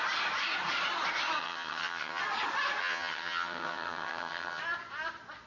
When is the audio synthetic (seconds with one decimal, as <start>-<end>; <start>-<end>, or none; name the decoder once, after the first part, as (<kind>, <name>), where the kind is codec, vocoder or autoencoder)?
1.4-2.2 (vocoder, HiFi-GAN); 2.8-4.6